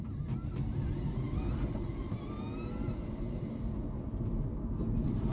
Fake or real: real